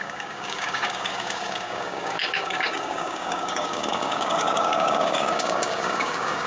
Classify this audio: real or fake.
fake